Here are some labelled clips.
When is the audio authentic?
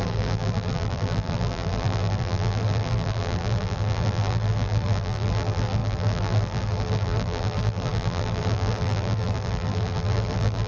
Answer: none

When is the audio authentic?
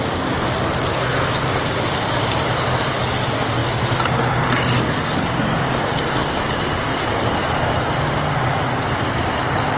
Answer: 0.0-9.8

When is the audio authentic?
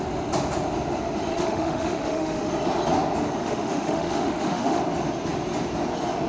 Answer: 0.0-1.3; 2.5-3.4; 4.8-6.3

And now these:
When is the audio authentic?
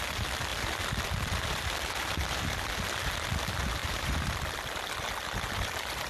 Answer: 0.0-0.5; 2.7-3.8; 4.5-6.1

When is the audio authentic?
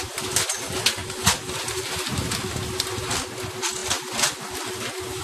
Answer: 0.0-1.0; 1.7-5.2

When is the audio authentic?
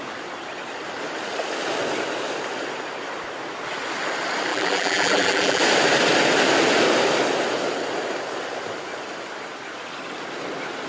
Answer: 0.0-4.5; 5.6-10.9